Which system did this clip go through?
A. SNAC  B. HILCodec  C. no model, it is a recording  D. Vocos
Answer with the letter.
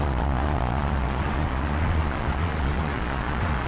D